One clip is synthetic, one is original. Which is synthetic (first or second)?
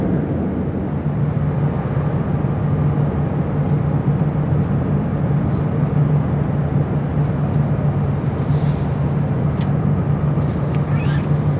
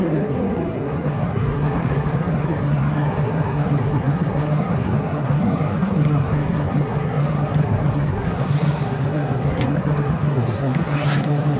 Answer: second